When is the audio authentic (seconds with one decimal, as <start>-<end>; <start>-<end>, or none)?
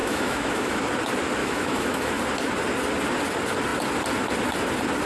0.8-1.4; 2.2-5.1